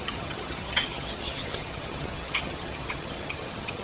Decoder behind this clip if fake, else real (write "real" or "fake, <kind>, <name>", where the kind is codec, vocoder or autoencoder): fake, vocoder, HiFi-GAN